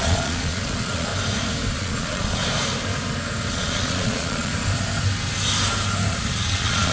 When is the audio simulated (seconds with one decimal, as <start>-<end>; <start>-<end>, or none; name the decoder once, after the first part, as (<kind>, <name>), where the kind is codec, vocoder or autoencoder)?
0.0-1.1 (vocoder, Vocos); 1.7-2.4; 3.5-4.5; 6.1-6.9